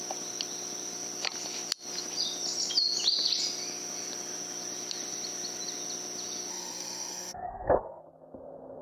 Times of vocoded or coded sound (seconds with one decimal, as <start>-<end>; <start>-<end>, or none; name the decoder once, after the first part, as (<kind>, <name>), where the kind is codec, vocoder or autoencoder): 6.5-8.0 (codec, SNAC)